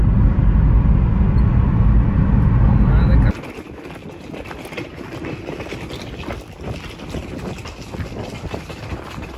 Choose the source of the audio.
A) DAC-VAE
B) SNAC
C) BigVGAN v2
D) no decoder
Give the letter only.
D